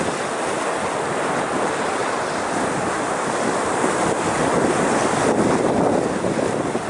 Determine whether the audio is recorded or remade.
recorded